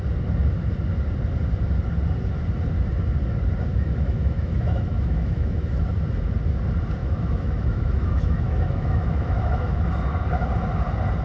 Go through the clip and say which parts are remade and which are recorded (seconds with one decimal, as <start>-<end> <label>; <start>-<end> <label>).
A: 0.0-3.7 recorded; 3.7-5.9 remade; 5.9-7.0 recorded; 7.0-9.9 remade; 9.9-11.2 recorded